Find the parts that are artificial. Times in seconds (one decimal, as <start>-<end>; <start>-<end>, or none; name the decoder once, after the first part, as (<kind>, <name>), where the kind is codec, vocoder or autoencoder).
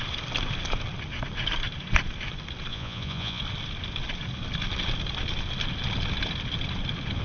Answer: 2.7-3.4 (vocoder, Vocos)